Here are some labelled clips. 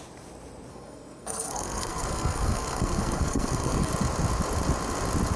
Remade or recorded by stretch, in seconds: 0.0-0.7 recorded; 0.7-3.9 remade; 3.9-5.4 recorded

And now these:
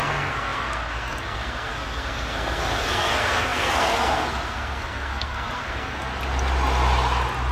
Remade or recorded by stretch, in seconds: 0.0-6.1 remade; 6.1-7.5 recorded

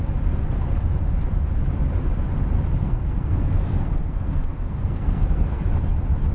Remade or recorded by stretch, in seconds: 0.0-2.8 recorded; 2.8-5.6 remade; 5.6-6.3 recorded

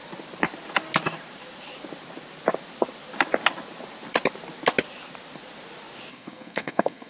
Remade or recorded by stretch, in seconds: 0.0-6.1 recorded; 6.1-7.1 remade

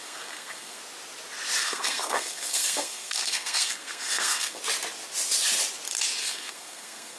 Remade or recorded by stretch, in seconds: 0.0-0.8 remade; 0.8-1.6 recorded; 1.6-4.6 remade; 4.6-6.2 recorded; 6.2-7.2 remade